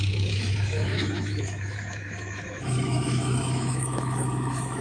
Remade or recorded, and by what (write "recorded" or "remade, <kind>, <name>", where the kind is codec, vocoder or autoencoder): remade, autoencoder, DAC-VAE